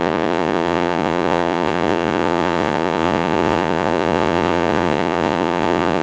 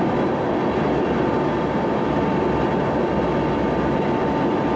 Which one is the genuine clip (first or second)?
second